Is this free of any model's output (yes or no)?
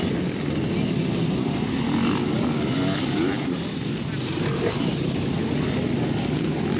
yes